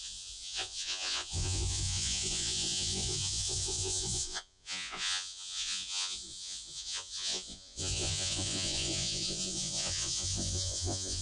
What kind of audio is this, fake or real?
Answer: fake